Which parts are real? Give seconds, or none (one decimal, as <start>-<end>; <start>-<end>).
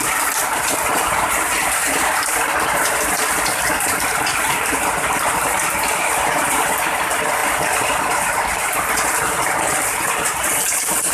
0.0-1.8; 6.5-11.1